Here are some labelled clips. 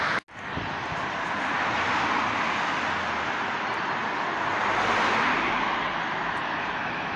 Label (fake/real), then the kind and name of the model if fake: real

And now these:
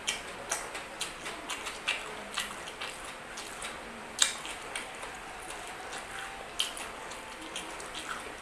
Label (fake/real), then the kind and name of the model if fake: real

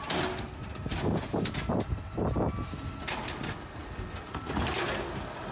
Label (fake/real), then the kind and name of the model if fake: real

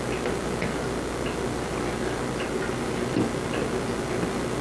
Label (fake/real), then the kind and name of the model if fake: real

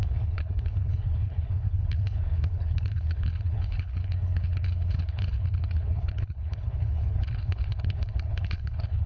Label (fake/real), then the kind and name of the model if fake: fake, codec, HILCodec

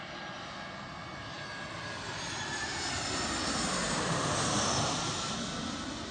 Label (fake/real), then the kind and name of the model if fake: real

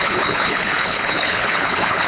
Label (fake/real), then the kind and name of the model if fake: fake, codec, HILCodec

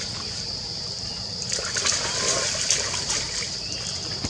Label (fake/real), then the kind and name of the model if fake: real